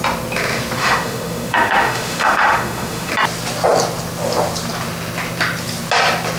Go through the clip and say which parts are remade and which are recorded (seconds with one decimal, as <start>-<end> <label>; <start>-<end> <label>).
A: 0.0-0.8 recorded; 0.8-3.1 remade; 3.1-6.4 recorded